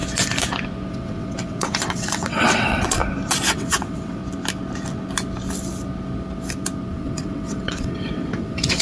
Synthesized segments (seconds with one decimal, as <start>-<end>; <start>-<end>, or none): 0.9-3.0; 3.5-4.2; 6.9-8.8